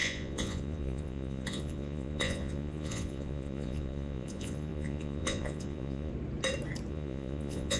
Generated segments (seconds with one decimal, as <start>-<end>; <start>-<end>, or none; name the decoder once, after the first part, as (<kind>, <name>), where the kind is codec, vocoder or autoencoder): 0.0-6.1 (vocoder, Vocos); 6.9-7.8